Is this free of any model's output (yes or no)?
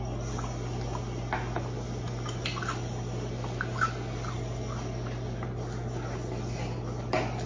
yes